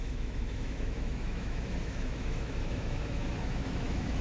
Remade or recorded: remade